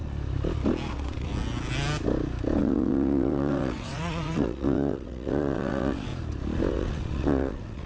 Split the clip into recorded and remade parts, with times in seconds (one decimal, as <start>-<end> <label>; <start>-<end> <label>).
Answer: 0.0-0.9 recorded; 0.9-1.3 remade; 1.3-2.6 recorded; 2.6-6.1 remade; 6.1-6.7 recorded; 6.7-7.9 remade